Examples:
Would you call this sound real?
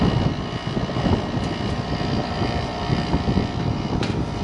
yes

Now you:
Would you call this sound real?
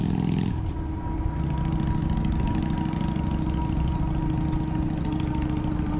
yes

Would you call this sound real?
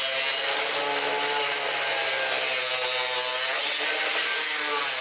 yes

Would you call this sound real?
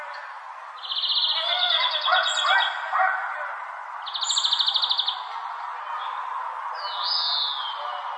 yes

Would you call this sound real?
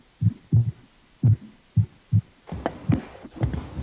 yes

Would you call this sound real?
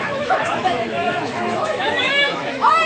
no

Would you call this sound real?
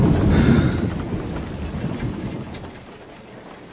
yes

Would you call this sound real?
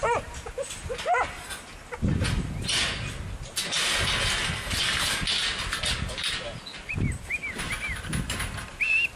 yes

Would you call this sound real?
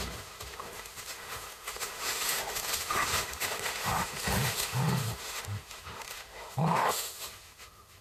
no